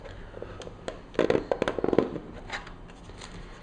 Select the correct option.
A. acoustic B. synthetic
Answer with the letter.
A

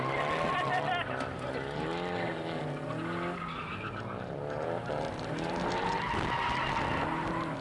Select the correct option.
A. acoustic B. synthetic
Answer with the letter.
A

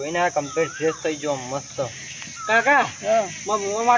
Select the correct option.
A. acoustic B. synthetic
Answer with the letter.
A